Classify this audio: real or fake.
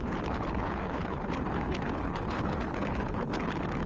fake